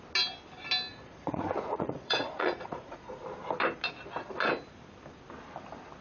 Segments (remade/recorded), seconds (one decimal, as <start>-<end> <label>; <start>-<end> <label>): 0.0-0.9 recorded; 0.9-3.2 remade; 3.2-6.0 recorded